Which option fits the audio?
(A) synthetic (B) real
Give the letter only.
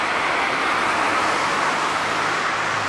A